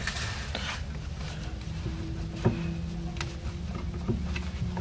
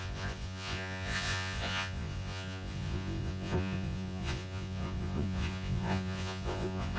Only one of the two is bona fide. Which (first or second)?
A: first